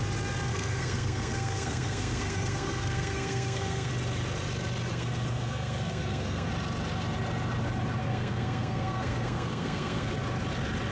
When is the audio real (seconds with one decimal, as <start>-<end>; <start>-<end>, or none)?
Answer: 0.0-0.5; 3.9-4.9; 6.5-8.0; 10.1-10.9